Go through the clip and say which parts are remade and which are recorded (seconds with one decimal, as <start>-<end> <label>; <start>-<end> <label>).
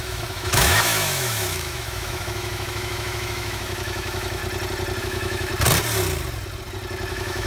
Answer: 0.0-4.4 remade; 4.4-5.0 recorded; 5.0-5.5 remade; 5.5-7.1 recorded; 7.1-7.5 remade